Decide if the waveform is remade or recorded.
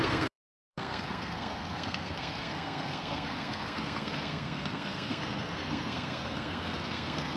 remade